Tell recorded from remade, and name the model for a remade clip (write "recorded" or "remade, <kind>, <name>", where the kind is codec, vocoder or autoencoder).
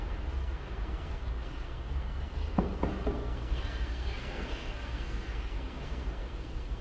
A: remade, codec, SNAC